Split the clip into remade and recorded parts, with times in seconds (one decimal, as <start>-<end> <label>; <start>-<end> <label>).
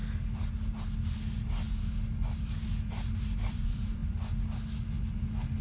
0.0-2.9 recorded; 2.9-4.0 remade; 4.0-5.6 recorded